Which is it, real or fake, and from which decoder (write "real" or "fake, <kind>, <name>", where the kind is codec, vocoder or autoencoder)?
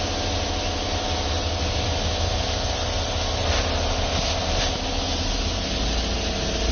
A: real